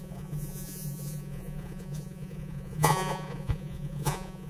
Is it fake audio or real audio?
fake